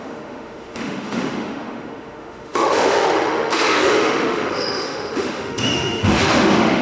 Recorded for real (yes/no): no